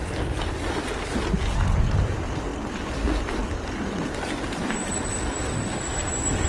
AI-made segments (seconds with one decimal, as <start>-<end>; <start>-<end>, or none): none